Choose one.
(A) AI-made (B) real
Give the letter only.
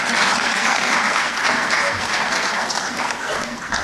A